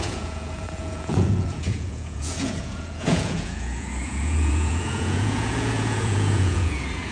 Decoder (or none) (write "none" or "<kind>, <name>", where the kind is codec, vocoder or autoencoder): vocoder, Vocos